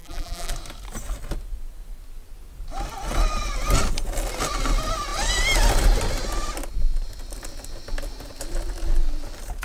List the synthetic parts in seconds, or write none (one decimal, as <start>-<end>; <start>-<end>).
0.0-0.5